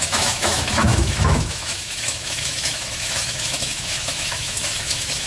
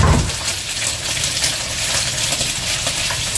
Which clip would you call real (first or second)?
second